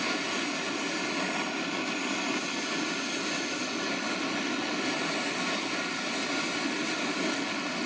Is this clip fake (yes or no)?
no